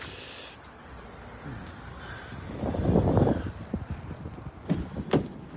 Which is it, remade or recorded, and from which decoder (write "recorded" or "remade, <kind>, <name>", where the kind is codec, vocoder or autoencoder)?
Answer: recorded